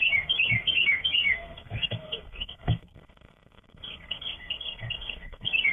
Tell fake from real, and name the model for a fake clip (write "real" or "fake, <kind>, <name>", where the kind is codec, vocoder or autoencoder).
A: fake, codec, SNAC